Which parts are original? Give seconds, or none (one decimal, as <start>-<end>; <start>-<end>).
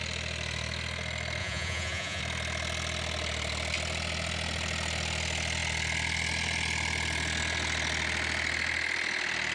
0.0-1.4; 2.2-9.5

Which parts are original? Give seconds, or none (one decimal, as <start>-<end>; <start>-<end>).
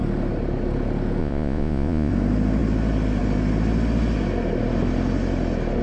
0.0-1.2; 2.1-5.8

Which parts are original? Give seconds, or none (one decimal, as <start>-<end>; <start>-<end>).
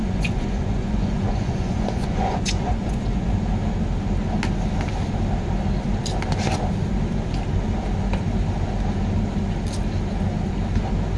3.3-11.2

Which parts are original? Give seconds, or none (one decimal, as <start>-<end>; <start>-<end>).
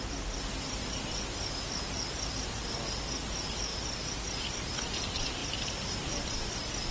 0.0-6.9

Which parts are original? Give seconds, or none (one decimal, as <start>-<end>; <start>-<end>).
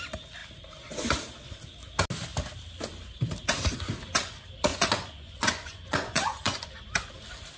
0.0-4.7; 6.7-7.6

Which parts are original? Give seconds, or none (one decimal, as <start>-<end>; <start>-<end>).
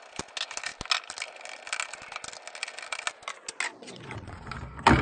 0.0-3.7; 4.5-5.0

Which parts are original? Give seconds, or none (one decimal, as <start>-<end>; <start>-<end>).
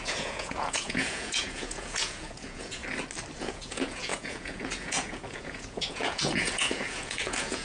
2.8-3.4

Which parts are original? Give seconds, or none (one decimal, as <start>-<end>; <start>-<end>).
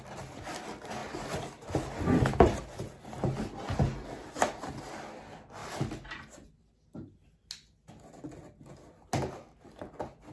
0.0-10.3